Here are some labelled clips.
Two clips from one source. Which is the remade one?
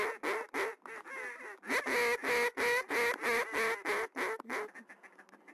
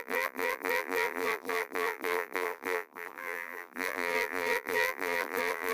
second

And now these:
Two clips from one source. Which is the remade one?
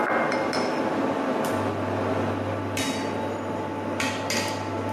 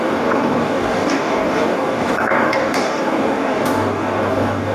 second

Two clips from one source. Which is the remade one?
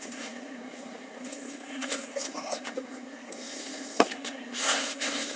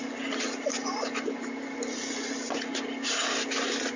first